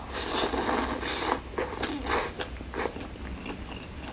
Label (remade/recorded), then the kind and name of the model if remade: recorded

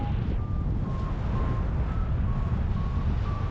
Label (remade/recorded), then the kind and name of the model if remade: recorded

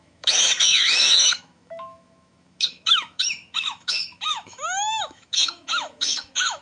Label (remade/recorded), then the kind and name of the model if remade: remade, autoencoder, DAC-VAE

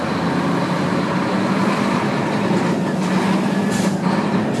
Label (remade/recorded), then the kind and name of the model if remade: recorded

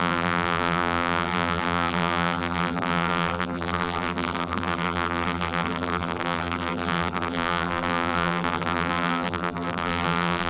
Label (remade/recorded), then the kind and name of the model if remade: remade, vocoder, BigVGAN v2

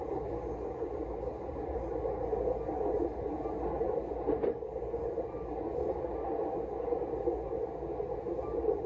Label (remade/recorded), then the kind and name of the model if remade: recorded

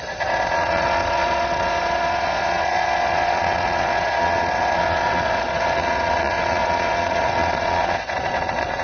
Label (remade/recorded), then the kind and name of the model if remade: remade, vocoder, Vocos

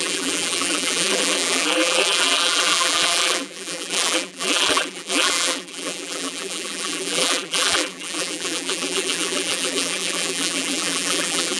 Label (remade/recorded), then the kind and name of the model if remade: remade, vocoder, BigVGAN v2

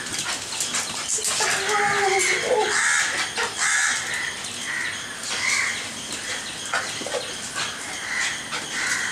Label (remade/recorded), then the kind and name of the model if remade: recorded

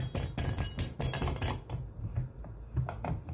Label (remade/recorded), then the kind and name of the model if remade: recorded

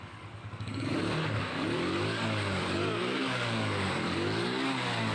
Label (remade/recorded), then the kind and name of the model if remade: remade, codec, DAC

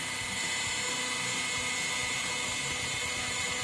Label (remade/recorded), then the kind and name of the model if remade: recorded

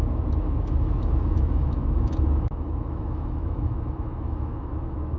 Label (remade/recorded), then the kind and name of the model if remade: remade, autoencoder, DAC-VAE